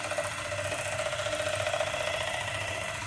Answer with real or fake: real